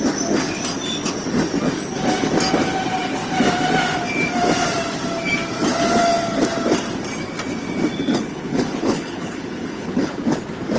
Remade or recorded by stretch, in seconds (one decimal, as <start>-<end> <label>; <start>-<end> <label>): 0.0-8.1 recorded; 8.1-10.2 remade; 10.2-10.8 recorded